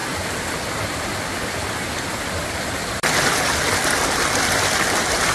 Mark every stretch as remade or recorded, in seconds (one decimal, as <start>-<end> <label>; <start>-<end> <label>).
0.0-5.3 recorded